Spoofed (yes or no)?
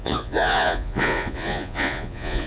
yes